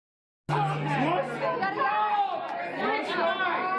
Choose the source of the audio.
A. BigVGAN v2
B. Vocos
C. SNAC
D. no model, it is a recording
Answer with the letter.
D